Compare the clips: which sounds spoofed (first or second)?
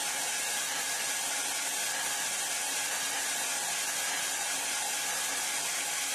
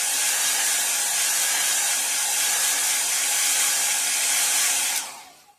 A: second